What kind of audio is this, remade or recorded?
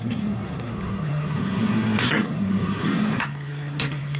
remade